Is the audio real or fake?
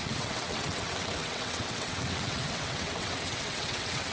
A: fake